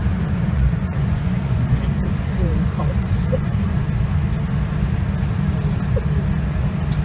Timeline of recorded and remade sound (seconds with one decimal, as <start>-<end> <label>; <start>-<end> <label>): 0.0-3.8 remade; 3.8-7.0 recorded